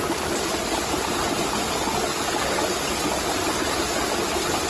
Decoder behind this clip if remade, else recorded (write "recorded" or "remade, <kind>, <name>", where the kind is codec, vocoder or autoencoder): recorded